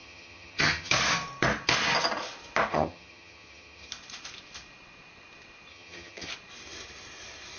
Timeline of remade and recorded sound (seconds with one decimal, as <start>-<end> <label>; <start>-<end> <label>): 0.0-0.9 remade; 0.9-2.7 recorded; 2.7-3.9 remade; 3.9-5.7 recorded; 5.7-6.3 remade; 6.3-7.6 recorded